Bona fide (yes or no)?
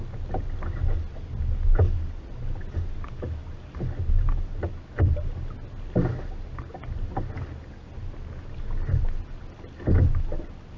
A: yes